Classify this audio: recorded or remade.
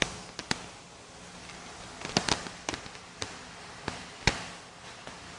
recorded